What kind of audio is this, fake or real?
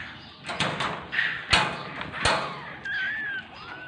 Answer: real